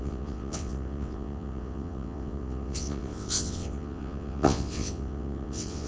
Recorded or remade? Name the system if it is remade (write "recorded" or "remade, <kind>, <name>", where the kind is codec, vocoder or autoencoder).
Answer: remade, vocoder, WaveNeXt